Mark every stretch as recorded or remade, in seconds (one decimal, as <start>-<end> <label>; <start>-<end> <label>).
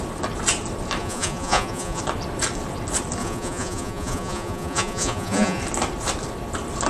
0.0-1.0 recorded; 1.0-2.0 remade; 2.0-3.2 recorded; 3.2-5.6 remade; 5.6-6.9 recorded